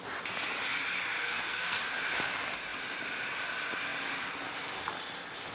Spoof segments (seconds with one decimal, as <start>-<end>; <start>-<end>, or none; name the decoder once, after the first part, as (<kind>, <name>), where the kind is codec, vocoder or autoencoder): 1.2-1.8 (codec, SNAC)